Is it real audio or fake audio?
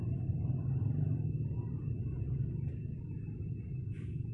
real